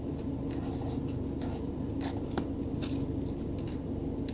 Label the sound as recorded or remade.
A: recorded